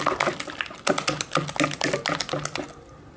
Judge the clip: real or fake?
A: real